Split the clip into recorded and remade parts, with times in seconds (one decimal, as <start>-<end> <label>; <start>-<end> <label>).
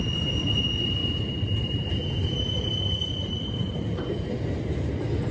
0.0-1.0 recorded; 1.0-4.2 remade; 4.2-5.3 recorded